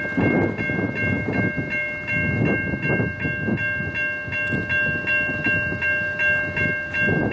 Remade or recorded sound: recorded